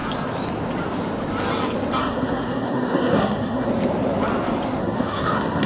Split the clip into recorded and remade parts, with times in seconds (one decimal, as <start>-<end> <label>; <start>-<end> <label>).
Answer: 0.0-2.0 recorded; 2.0-3.7 remade; 3.7-4.8 recorded; 4.8-5.7 remade